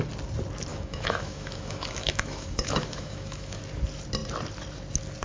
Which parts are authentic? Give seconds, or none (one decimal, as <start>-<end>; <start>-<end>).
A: 0.0-0.7; 3.6-5.2